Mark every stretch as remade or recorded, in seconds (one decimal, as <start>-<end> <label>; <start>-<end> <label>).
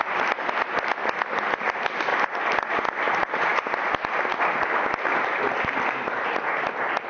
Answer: 0.0-7.1 recorded